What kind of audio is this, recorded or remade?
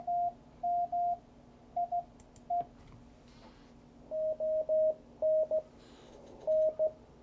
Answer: recorded